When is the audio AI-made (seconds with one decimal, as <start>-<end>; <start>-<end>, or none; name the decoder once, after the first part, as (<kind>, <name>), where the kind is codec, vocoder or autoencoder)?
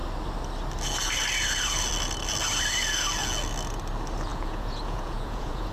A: 4.3-5.7 (vocoder, Vocos)